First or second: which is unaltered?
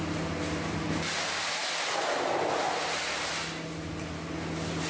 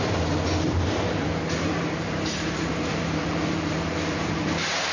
first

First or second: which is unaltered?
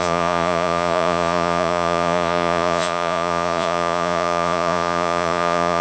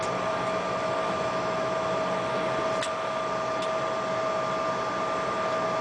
second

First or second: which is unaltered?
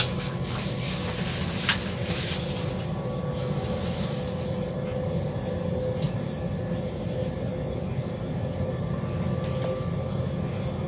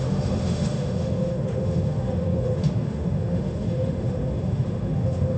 first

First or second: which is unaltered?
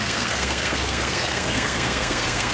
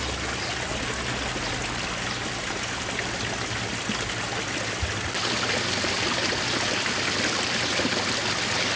second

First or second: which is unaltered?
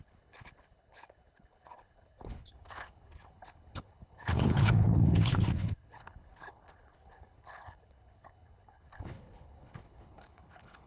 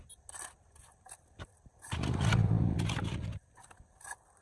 second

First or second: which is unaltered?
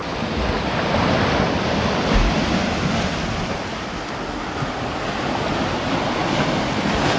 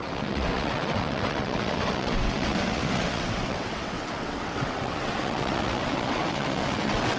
first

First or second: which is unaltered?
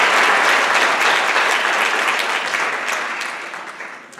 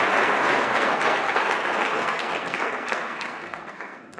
first